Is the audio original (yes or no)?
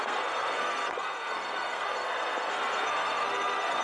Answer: no